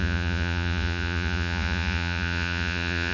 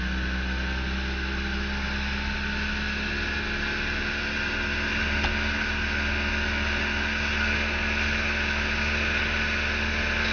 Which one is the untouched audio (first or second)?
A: second